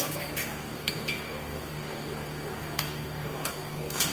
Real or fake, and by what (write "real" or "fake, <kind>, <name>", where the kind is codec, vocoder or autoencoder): fake, codec, DAC